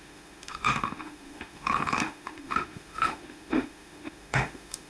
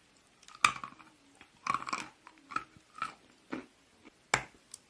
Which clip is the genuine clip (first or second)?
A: second